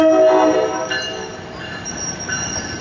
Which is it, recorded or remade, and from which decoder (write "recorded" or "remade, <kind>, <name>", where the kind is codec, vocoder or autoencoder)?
recorded